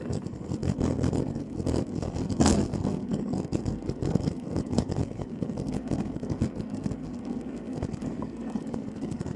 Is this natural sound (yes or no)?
no